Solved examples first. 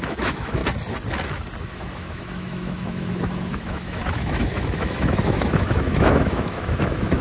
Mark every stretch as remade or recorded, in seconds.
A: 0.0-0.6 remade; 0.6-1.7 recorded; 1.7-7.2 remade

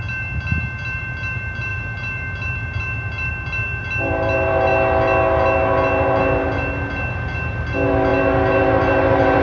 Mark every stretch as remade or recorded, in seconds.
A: 0.0-4.7 remade; 4.7-6.2 recorded; 6.2-8.1 remade; 8.1-8.6 recorded; 8.6-9.4 remade